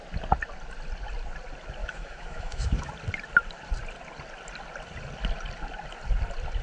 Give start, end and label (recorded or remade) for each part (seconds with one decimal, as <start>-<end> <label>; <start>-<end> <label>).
0.0-1.8 recorded; 1.8-2.9 remade; 2.9-6.6 recorded